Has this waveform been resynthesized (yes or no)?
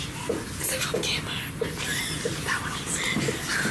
no